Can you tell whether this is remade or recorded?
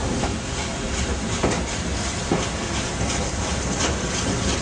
recorded